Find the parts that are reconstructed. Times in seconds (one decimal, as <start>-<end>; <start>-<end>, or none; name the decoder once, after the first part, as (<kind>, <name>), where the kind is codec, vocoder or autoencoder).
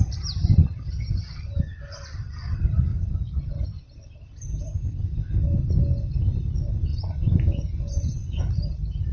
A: 2.9-3.8 (vocoder, Vocos); 6.9-8.5